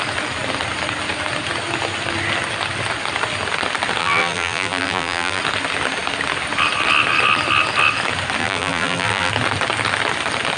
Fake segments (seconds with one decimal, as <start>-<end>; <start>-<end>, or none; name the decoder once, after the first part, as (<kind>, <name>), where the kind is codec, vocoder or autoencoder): 4.0-5.4 (vocoder, BigVGAN v2); 8.4-9.3